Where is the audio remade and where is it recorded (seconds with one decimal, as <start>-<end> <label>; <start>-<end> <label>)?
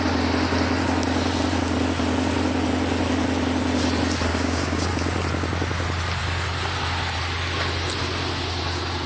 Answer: 0.0-4.3 recorded; 4.3-4.9 remade; 4.9-9.1 recorded